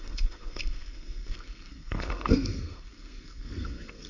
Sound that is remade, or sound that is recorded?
remade